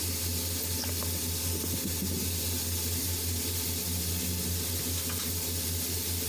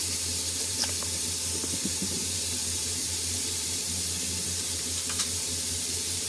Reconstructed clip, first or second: second